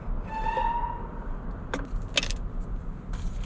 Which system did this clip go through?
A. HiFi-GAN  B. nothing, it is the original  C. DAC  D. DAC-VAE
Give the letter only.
B